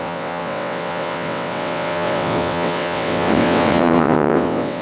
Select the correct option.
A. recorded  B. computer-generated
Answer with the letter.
B